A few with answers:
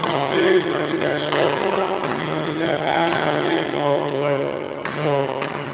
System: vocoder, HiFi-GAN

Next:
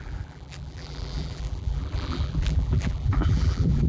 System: vocoder, BigVGAN v2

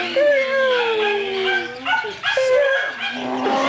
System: none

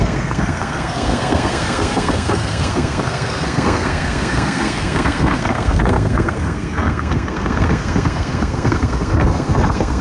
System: codec, SNAC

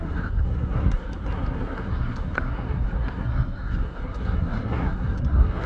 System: codec, SNAC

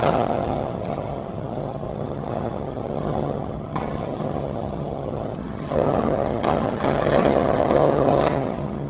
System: vocoder, HiFi-GAN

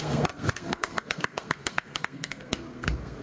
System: codec, SNAC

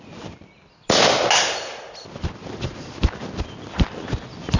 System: none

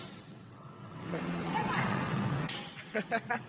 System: vocoder, WaveNeXt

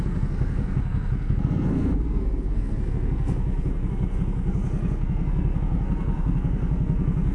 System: codec, SNAC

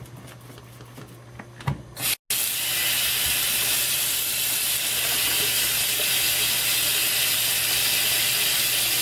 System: none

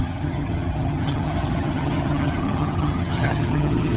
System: vocoder, HiFi-GAN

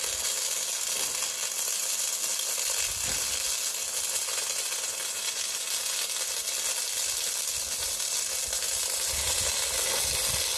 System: none